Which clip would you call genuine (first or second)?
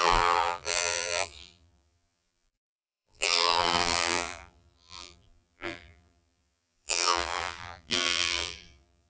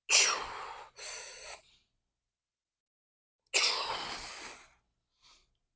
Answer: second